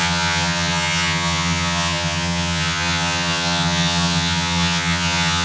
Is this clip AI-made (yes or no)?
yes